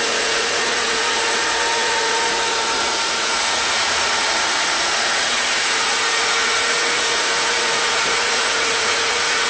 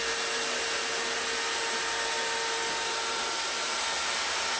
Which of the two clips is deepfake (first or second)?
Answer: first